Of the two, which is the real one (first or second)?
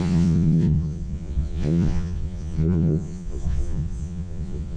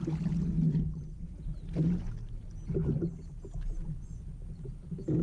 second